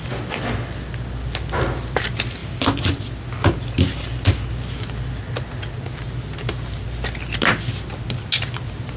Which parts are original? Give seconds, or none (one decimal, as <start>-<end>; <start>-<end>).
0.0-9.0